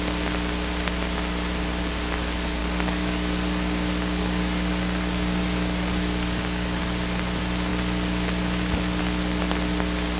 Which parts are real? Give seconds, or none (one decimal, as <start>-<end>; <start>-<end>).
0.0-2.6; 6.8-10.2